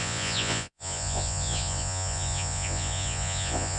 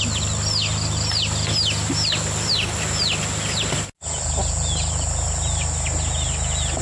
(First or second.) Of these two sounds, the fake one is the first